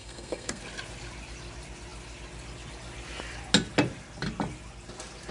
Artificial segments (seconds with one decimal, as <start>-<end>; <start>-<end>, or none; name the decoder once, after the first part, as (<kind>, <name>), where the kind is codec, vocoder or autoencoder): 0.0-0.6 (codec, SNAC)